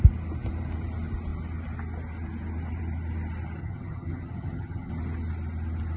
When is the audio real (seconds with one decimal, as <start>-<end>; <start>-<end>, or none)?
0.0-3.6; 4.9-6.0